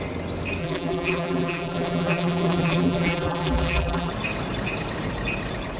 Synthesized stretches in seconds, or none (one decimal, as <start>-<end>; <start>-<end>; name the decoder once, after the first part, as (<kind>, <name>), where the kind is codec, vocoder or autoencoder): 0.6-4.1 (vocoder, BigVGAN v2)